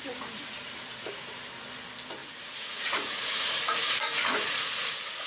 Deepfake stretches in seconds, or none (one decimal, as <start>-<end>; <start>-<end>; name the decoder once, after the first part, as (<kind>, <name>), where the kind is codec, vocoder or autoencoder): 2.2-5.3 (vocoder, Vocos)